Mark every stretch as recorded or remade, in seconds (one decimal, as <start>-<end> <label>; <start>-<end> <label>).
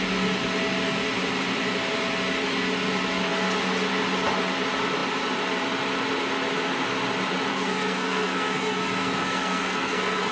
0.0-7.5 recorded; 7.5-10.3 remade